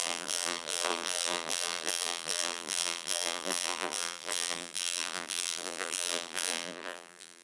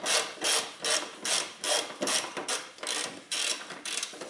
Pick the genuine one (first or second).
second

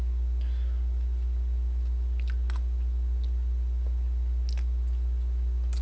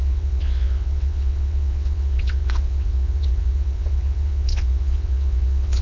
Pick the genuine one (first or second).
first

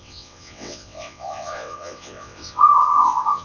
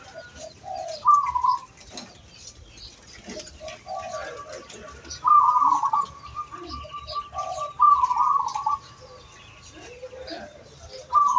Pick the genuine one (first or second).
second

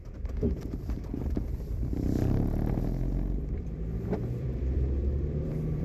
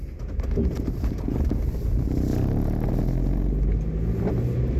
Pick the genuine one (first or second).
second